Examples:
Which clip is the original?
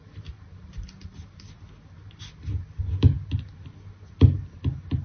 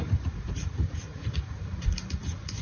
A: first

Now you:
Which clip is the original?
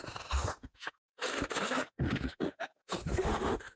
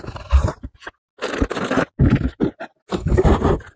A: second